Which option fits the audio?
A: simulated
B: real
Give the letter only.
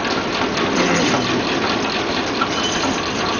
A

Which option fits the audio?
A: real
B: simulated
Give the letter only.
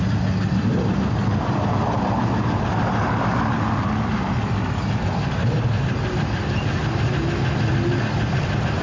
A